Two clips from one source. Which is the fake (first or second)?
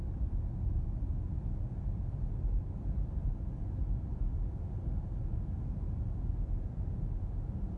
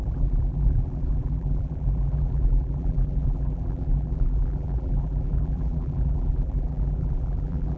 second